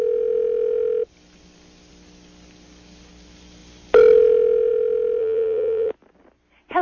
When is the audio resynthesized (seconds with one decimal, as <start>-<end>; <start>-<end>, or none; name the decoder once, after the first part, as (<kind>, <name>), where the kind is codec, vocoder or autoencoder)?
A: 5.2-5.9 (vocoder, BigVGAN v2)

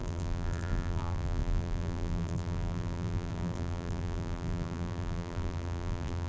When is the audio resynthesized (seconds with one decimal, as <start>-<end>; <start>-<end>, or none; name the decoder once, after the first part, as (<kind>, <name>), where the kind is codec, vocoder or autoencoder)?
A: 0.0-6.3 (vocoder, BigVGAN v2)

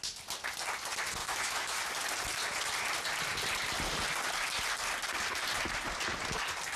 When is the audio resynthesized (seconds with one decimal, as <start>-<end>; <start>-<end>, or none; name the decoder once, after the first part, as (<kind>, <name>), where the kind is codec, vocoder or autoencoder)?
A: 1.2-1.8 (autoencoder, DAC-VAE)

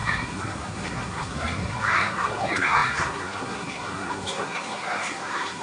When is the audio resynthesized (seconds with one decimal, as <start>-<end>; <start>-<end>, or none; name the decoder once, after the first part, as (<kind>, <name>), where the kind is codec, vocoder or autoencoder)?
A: 0.0-5.6 (codec, SNAC)